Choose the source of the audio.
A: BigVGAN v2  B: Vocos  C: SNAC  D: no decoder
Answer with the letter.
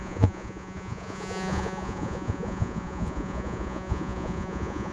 B